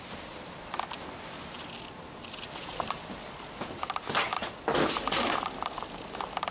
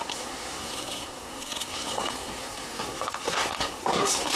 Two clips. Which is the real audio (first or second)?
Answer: first